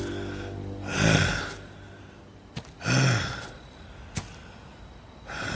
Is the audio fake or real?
real